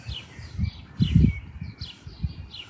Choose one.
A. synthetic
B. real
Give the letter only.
B